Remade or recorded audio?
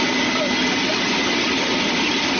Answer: recorded